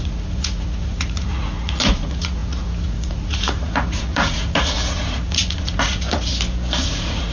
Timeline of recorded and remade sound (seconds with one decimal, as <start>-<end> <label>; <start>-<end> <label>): 0.0-6.3 remade; 6.3-6.8 recorded; 6.8-7.3 remade